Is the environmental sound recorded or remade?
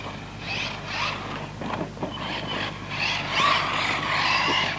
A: recorded